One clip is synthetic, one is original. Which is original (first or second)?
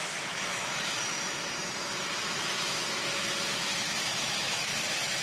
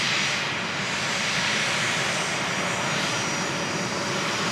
second